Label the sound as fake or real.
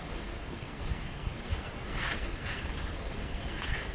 fake